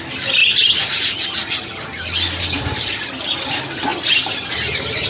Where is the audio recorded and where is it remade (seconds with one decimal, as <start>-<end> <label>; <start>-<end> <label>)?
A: 0.0-5.1 recorded